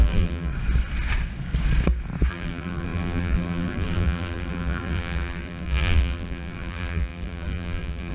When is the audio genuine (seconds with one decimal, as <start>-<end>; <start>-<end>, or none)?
0.5-2.3